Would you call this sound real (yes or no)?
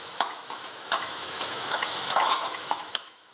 no